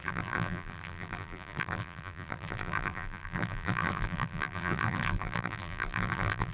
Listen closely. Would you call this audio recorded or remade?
remade